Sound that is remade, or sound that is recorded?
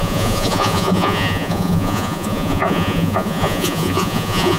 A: remade